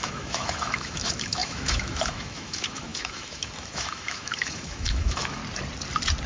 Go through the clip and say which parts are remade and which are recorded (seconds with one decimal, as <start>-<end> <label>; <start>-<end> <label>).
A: 0.0-5.4 remade; 5.4-6.3 recorded